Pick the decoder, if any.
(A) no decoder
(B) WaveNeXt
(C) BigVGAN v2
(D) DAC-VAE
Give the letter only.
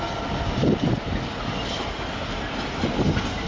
A